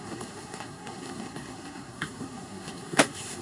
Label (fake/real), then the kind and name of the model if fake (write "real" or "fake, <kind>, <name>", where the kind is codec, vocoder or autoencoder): fake, codec, SNAC